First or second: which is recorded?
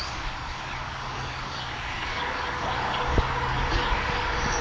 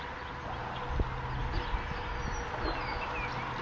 second